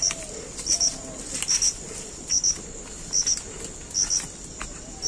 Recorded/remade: recorded